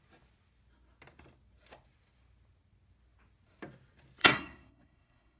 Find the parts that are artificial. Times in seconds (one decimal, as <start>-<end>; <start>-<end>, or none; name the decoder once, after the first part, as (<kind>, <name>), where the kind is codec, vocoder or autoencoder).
4.2-5.4 (codec, SNAC)